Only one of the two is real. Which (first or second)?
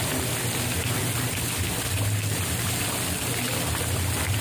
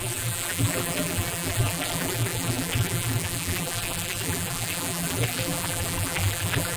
first